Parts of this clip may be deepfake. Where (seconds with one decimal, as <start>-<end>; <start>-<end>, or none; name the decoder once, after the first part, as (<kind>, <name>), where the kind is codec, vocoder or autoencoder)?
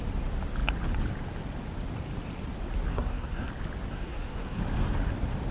2.9-3.5 (codec, SNAC); 3.9-4.6